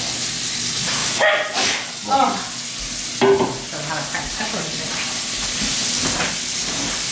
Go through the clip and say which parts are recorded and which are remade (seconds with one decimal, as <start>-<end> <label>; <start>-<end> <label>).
0.0-7.1 recorded